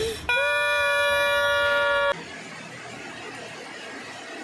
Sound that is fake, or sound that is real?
real